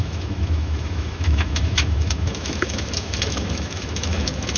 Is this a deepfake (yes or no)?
yes